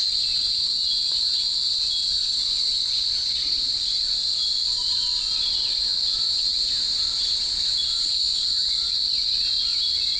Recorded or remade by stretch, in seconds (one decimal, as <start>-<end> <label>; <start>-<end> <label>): 0.0-10.2 recorded